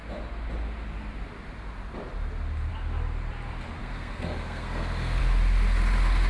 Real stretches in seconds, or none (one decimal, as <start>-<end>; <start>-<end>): 0.0-3.8; 5.2-6.3